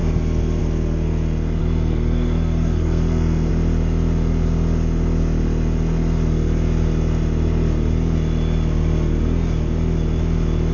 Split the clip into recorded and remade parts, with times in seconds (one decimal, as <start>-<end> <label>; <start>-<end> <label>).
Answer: 0.0-1.6 recorded; 1.6-3.5 remade; 3.5-10.7 recorded